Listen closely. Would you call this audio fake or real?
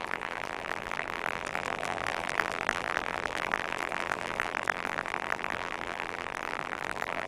fake